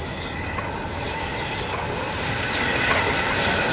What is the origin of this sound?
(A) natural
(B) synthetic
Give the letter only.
A